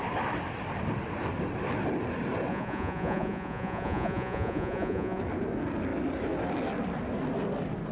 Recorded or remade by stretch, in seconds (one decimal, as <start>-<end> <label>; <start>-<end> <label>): 0.0-2.5 recorded; 2.5-5.2 remade; 5.2-7.9 recorded